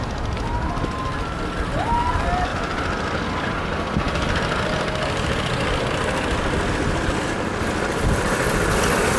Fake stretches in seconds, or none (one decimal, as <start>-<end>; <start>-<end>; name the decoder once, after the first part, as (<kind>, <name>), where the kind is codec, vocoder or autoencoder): none